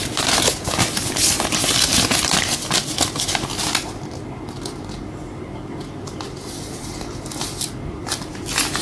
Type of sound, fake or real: real